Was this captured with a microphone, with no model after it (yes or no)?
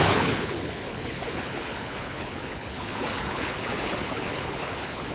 no